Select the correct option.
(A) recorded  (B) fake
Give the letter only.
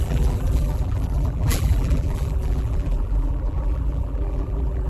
B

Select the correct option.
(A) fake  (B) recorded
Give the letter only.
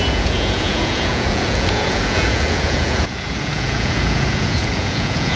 A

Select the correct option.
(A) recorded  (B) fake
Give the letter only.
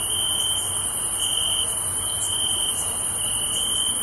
A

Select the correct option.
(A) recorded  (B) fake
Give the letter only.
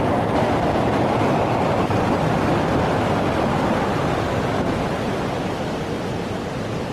A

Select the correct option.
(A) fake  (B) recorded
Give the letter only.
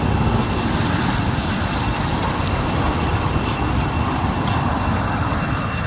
A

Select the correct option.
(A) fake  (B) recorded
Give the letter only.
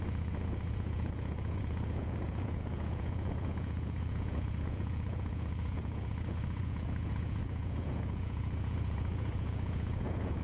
A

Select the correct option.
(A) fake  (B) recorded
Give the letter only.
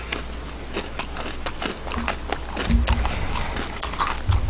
B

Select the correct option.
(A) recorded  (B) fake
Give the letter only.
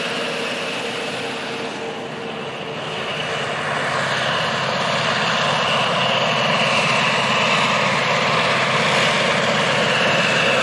A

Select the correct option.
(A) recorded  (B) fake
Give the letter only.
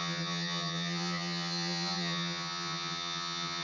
B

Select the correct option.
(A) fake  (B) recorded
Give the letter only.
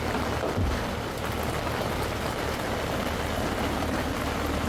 B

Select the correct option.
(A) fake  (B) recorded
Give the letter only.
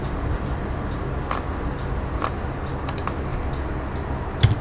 B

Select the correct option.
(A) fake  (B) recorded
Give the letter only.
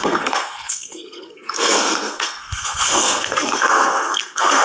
A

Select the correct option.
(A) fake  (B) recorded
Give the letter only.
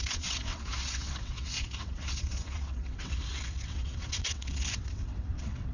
A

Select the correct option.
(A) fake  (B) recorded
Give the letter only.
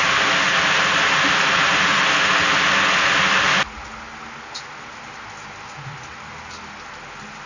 B